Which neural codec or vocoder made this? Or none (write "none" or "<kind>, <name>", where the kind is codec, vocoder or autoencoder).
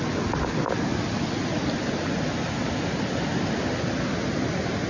none